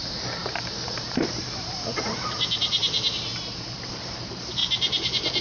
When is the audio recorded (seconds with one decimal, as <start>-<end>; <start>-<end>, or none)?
none